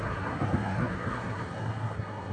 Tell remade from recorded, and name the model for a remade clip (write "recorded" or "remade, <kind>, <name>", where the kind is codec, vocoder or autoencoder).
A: remade, codec, SNAC